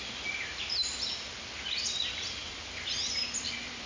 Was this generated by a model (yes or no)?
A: no